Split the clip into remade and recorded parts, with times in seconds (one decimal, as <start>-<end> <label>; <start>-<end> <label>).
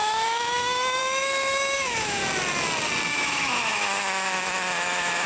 0.0-2.2 remade; 2.2-3.1 recorded; 3.1-5.3 remade